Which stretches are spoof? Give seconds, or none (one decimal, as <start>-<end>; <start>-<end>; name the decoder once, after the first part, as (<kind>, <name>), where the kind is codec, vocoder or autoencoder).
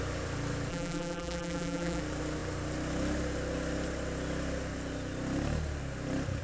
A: 0.7-2.0 (vocoder, BigVGAN v2)